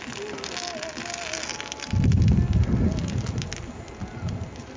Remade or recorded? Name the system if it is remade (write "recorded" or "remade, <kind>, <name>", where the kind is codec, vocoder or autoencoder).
recorded